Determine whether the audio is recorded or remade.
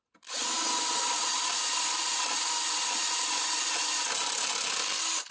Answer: recorded